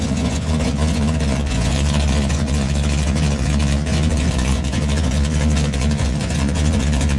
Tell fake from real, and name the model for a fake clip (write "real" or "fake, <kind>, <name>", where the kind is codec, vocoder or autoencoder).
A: fake, vocoder, Vocos